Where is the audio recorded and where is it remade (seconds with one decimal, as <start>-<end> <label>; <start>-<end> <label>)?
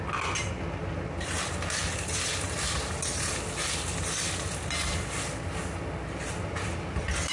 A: 0.0-7.3 recorded